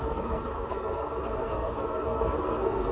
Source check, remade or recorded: remade